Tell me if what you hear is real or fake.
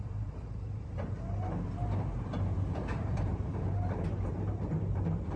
fake